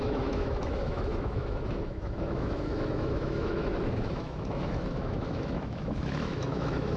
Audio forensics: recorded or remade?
remade